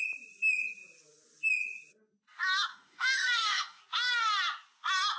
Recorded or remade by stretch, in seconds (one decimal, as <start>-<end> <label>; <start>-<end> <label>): 0.0-2.7 recorded; 2.7-3.8 remade; 3.8-5.2 recorded